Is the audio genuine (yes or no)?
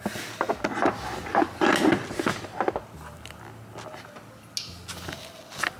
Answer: yes